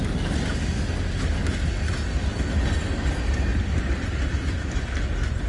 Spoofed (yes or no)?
no